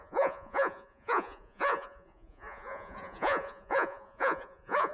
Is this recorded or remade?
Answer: remade